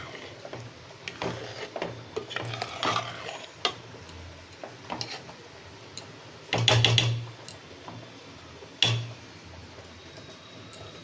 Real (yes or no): yes